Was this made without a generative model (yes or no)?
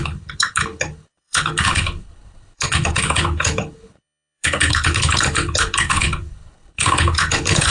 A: no